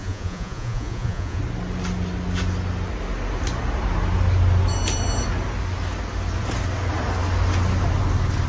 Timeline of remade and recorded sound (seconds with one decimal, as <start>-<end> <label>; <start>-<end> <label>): 0.0-1.4 remade; 1.4-8.5 recorded